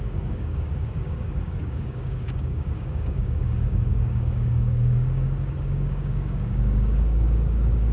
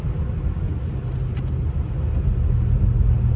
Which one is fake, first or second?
first